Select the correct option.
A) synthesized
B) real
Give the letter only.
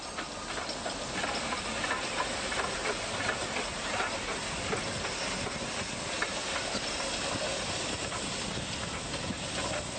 B